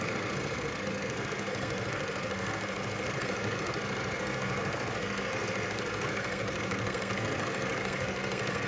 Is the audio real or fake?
fake